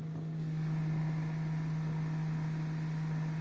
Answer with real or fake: real